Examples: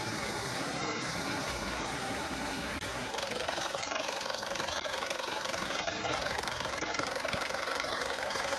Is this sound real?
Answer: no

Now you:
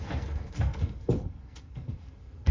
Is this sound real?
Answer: no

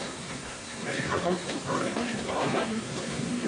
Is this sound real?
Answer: no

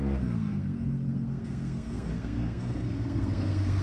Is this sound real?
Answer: no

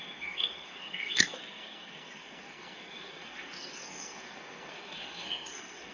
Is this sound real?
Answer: no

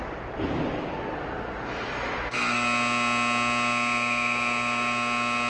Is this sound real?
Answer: yes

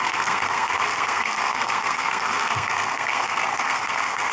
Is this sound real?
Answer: no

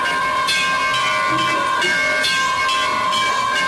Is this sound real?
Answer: yes